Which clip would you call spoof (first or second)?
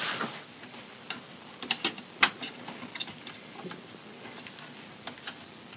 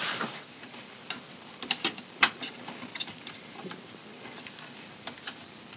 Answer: second